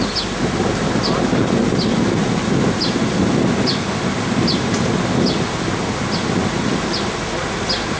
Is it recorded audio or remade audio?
recorded